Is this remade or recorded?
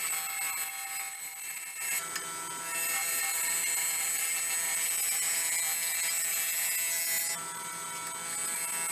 recorded